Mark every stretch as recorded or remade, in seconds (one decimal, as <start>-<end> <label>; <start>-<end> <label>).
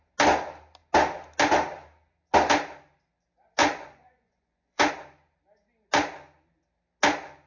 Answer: 0.0-3.6 recorded; 3.6-4.9 remade; 4.9-7.5 recorded